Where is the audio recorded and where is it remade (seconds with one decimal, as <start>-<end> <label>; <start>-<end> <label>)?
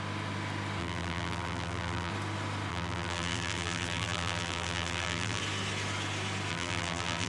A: 0.0-0.8 recorded; 0.8-2.1 remade; 2.1-2.7 recorded; 2.7-5.4 remade; 5.4-6.5 recorded; 6.5-7.3 remade